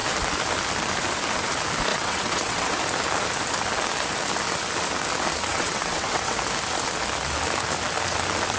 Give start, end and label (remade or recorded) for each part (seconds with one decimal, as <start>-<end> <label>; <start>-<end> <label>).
0.0-1.9 recorded; 1.9-2.8 remade; 2.8-5.5 recorded; 5.5-6.3 remade; 6.3-8.6 recorded